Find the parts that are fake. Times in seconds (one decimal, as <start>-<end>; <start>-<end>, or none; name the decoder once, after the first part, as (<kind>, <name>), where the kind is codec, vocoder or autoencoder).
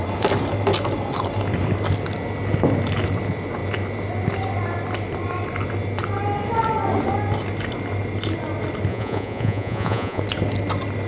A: 8.9-10.2 (vocoder, Vocos)